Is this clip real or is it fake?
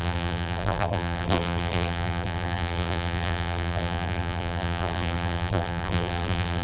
fake